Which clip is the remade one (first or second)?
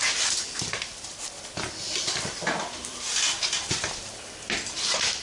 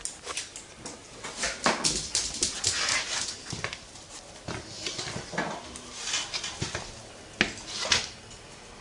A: first